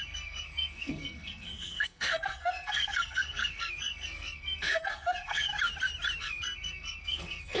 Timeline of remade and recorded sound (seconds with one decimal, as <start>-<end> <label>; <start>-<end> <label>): 0.0-5.5 remade; 5.5-6.2 recorded; 6.2-7.6 remade